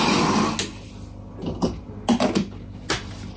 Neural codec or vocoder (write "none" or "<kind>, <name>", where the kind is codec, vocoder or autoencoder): none